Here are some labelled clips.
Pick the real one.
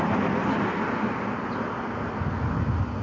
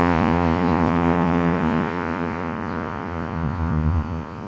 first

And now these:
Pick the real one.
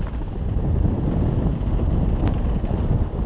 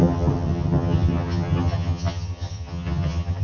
first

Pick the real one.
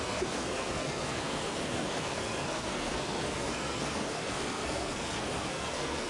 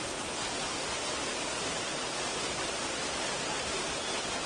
second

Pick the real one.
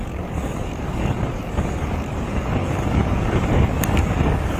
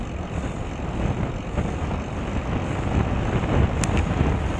second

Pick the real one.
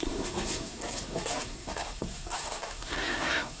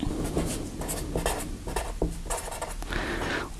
second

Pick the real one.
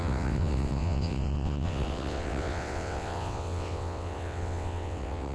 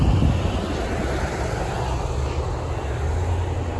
second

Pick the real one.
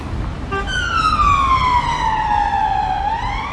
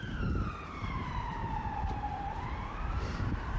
first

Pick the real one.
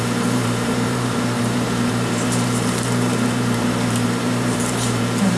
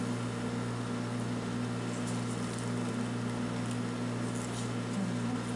second